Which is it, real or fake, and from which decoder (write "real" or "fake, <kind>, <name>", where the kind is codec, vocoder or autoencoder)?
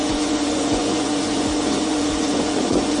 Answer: fake, vocoder, Vocos